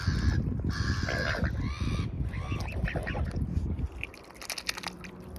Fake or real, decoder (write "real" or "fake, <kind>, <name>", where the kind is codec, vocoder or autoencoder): real